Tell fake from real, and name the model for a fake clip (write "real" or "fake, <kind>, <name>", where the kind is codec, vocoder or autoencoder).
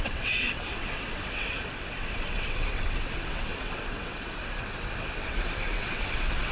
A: fake, vocoder, WaveNeXt